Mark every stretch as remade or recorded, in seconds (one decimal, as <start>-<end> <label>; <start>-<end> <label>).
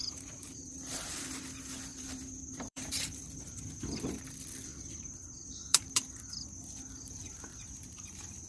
0.0-0.7 remade; 0.7-1.9 recorded; 1.9-3.4 remade; 3.4-4.7 recorded; 4.7-6.1 remade; 6.1-7.5 recorded; 7.5-8.5 remade